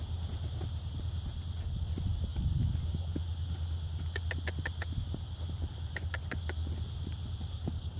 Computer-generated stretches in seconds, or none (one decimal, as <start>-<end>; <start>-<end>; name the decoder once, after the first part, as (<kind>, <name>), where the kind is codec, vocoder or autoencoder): none